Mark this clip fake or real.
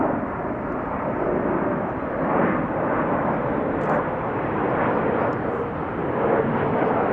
real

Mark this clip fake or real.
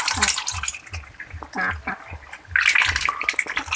real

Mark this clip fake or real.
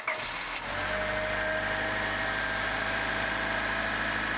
real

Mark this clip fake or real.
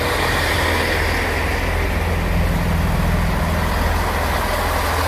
real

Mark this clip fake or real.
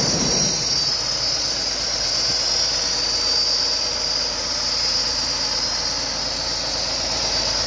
real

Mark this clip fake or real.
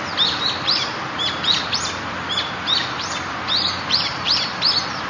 real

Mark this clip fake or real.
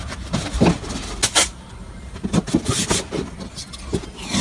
real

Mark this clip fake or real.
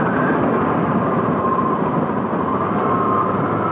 real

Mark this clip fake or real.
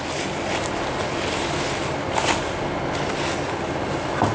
real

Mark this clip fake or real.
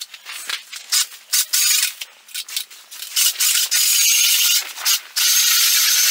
real